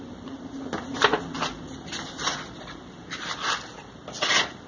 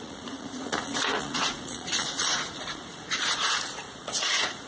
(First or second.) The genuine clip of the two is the first